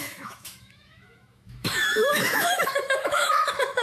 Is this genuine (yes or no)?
no